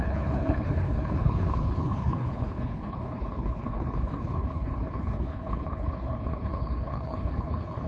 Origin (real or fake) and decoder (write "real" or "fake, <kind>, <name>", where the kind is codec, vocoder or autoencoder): fake, codec, HILCodec